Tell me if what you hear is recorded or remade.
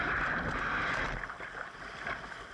recorded